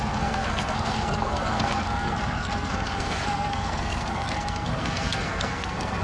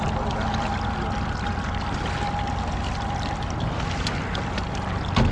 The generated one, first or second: first